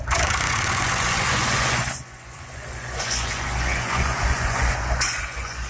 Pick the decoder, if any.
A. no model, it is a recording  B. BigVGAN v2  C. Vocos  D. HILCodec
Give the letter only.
C